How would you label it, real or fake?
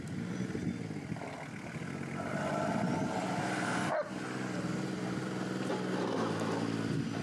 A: real